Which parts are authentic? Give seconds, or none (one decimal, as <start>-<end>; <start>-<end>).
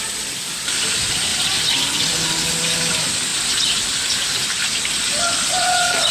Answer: 0.0-6.1